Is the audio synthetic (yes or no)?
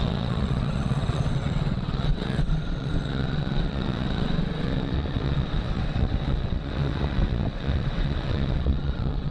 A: yes